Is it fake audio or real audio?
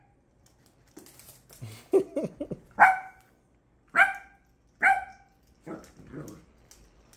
real